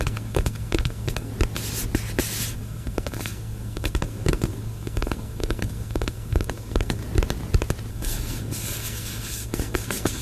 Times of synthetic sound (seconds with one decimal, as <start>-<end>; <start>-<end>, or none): 0.0-1.3; 2.5-7.0; 7.9-10.2